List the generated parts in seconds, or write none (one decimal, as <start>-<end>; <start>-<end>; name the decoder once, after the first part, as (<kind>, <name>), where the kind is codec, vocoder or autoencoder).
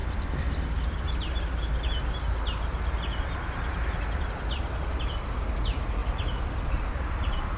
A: 4.6-7.6 (vocoder, BigVGAN v2)